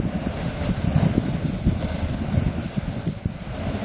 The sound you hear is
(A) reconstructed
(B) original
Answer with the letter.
B